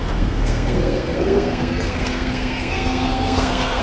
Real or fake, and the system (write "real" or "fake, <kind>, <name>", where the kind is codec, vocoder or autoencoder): fake, codec, SNAC